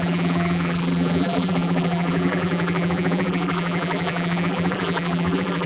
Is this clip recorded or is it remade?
remade